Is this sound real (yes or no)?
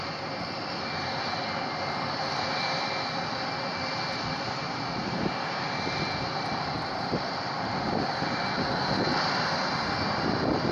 no